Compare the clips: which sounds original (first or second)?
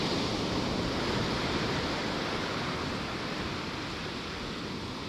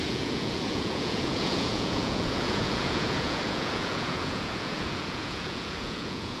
first